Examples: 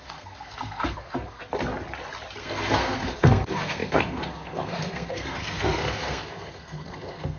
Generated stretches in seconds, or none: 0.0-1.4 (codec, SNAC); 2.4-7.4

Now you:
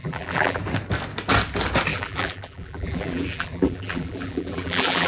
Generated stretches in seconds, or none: 0.0-0.6 (vocoder, BigVGAN v2); 1.9-5.1

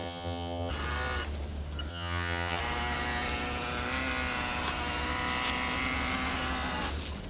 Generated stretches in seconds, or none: 0.0-0.7 (vocoder, HiFi-GAN); 1.9-2.6

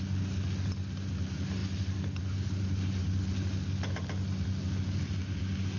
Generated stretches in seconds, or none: none

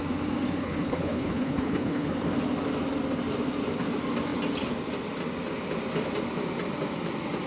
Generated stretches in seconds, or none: 0.6-2.1 (codec, HILCodec)

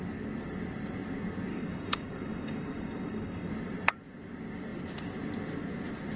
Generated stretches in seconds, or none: 1.5-3.5 (codec, DAC)